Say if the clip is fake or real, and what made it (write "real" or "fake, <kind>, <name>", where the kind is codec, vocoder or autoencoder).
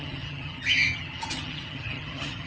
fake, vocoder, HiFi-GAN